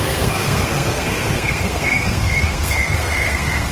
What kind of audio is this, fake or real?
fake